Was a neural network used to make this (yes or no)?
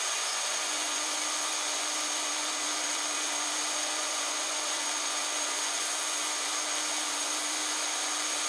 yes